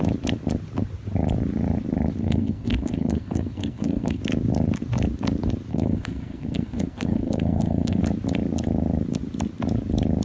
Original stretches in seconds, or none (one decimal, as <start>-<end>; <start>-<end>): 0.0-2.2; 4.2-5.7; 8.0-10.2